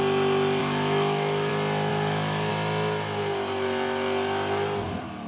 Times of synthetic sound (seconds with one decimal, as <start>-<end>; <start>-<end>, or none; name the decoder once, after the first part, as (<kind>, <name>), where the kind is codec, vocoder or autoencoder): 0.6-1.5 (autoencoder, DAC-VAE); 1.9-2.5